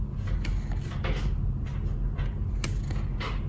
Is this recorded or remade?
recorded